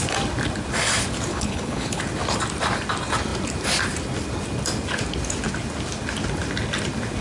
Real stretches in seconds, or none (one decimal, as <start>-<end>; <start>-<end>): 0.0-1.3; 2.0-7.2